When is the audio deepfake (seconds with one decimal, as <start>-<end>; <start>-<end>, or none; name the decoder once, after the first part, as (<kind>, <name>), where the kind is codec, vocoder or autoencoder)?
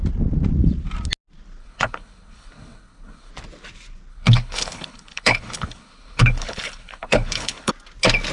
1.6-3.3 (codec, HILCodec); 4.1-7.7